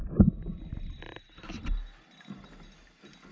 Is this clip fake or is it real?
real